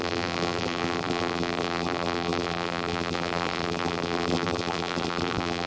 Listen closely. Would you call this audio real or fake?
fake